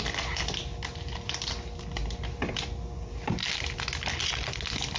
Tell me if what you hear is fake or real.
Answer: real